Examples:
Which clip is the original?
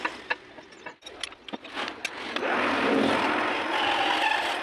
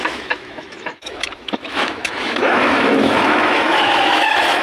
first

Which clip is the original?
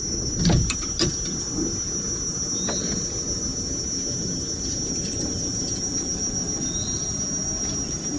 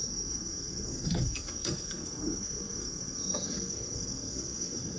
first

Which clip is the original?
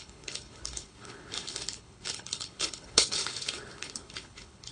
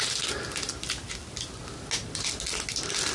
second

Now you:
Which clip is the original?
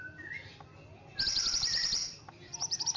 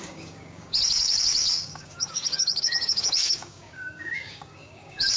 first